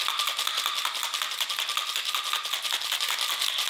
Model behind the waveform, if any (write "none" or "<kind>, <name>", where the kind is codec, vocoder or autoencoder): none